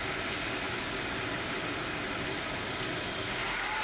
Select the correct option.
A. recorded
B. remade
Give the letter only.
A